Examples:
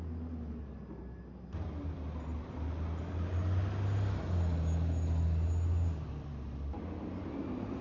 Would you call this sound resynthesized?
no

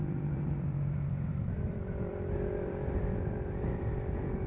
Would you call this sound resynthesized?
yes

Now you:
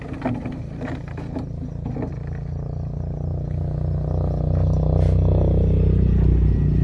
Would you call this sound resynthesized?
no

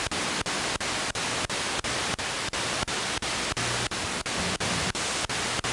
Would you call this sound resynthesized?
no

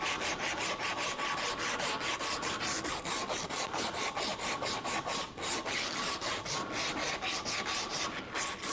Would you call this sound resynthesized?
no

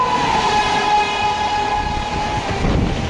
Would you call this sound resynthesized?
no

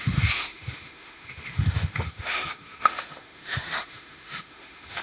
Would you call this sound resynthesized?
yes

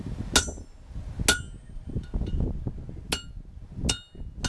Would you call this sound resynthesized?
no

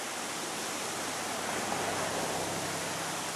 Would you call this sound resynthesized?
no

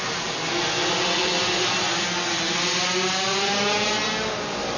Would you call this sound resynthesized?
no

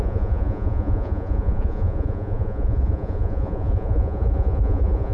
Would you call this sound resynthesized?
yes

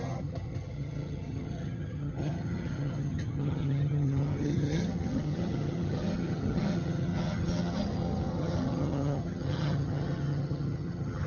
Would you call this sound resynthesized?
yes